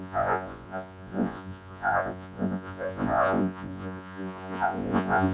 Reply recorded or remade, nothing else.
remade